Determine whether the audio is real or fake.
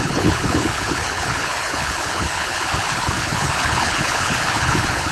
fake